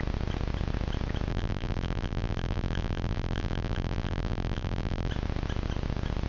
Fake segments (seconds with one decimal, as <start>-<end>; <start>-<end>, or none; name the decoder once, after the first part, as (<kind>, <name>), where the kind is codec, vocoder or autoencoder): 1.3-5.1 (vocoder, BigVGAN v2)